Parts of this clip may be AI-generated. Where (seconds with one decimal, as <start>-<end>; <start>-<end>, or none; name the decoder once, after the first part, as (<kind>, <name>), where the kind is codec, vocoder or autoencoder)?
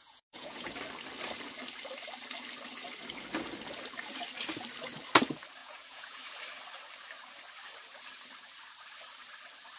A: 0.0-0.7 (vocoder, Vocos); 5.6-6.2